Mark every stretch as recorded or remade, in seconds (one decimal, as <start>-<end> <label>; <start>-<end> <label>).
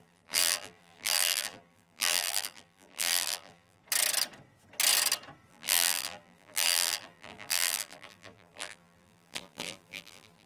0.0-3.8 remade; 3.8-5.5 recorded; 5.5-10.5 remade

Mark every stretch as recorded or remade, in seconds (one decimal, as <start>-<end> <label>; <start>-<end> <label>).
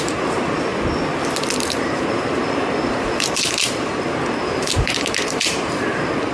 0.0-0.7 remade; 0.7-1.6 recorded; 1.6-6.3 remade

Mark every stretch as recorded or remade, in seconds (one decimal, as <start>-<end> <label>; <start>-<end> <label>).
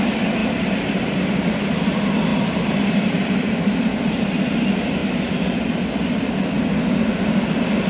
0.0-0.4 recorded; 0.4-1.6 remade; 1.6-2.3 recorded; 2.3-3.6 remade; 3.6-5.0 recorded; 5.0-5.9 remade; 5.9-7.9 recorded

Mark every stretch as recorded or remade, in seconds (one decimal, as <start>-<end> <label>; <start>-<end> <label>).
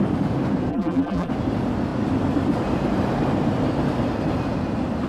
0.0-0.7 recorded; 0.7-1.3 remade; 1.3-5.1 recorded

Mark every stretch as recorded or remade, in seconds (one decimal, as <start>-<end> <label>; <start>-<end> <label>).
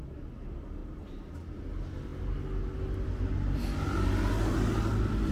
0.0-0.8 recorded; 0.8-1.6 remade; 1.6-5.3 recorded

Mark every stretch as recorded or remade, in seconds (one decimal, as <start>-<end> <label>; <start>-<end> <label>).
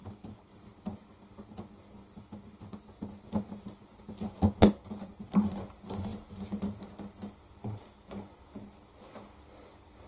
0.0-3.5 remade; 3.5-6.1 recorded; 6.1-6.8 remade; 6.8-10.1 recorded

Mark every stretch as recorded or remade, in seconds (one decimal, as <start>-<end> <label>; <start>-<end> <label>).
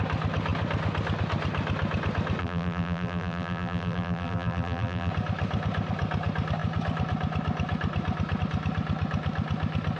0.0-2.4 recorded; 2.4-5.1 remade; 5.1-10.0 recorded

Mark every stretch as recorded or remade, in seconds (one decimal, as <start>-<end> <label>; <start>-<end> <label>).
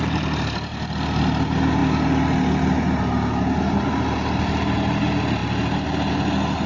0.0-6.7 recorded